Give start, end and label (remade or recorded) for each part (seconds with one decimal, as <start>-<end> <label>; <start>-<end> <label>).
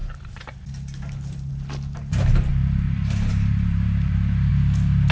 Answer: 0.0-2.5 recorded; 2.5-4.5 remade; 4.5-5.1 recorded